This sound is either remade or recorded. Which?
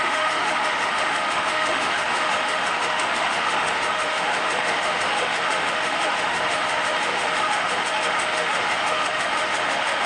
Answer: remade